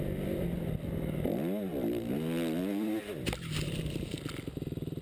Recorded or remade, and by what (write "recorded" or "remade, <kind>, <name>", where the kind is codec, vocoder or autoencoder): recorded